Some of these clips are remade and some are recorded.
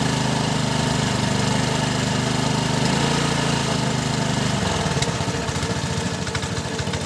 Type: recorded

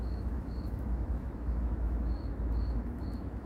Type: remade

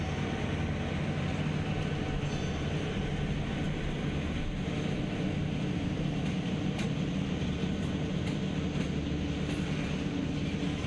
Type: recorded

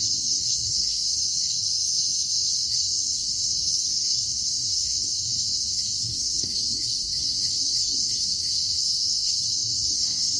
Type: remade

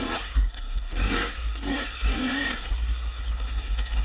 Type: remade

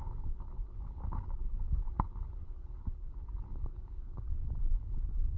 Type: remade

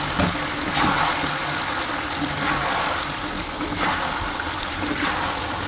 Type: recorded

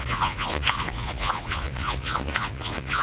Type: remade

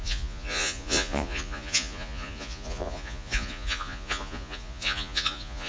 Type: remade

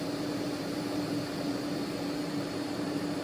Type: remade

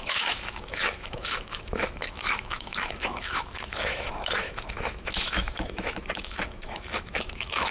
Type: remade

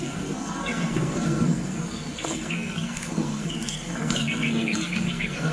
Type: remade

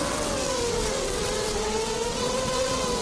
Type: remade